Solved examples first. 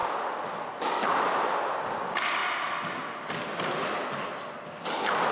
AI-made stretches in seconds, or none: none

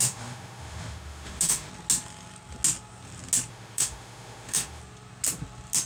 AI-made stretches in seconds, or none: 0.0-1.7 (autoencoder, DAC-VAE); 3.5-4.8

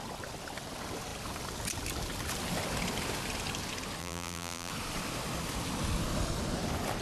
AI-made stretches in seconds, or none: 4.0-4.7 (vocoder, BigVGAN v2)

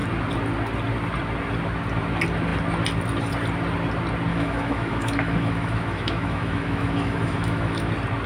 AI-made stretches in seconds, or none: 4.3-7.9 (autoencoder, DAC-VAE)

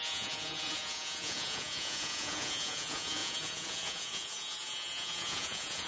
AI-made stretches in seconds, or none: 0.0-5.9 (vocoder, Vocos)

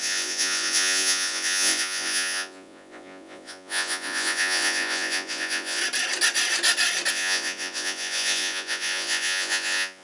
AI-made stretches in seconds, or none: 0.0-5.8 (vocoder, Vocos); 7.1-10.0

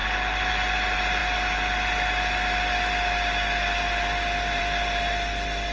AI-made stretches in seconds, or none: none

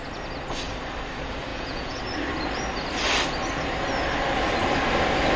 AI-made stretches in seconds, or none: 1.5-2.0 (vocoder, Vocos)